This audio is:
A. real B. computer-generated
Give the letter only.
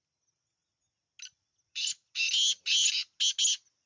A